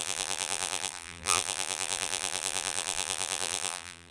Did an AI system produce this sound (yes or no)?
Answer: yes